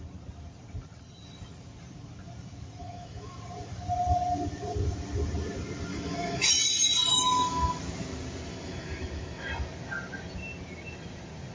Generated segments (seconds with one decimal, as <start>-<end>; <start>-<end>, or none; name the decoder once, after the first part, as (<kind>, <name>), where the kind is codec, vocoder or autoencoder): 2.8-3.4 (autoencoder, DAC-VAE); 5.9-6.5; 7.1-7.8; 8.5-9.5

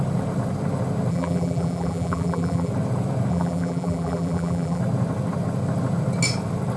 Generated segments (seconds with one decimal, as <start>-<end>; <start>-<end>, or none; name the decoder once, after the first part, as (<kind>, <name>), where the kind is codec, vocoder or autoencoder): 1.1-2.7 (vocoder, BigVGAN v2); 3.3-4.8